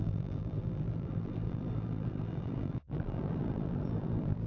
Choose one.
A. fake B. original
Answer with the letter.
A